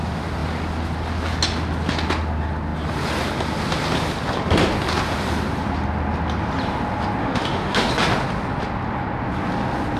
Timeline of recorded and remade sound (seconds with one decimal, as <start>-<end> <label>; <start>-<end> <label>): 0.0-7.2 recorded; 7.2-7.9 remade; 7.9-10.0 recorded